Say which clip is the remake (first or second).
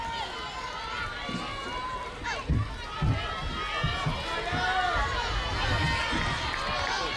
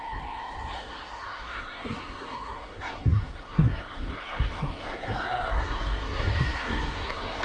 second